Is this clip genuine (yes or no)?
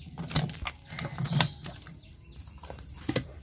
yes